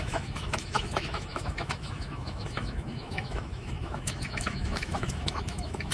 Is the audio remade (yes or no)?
yes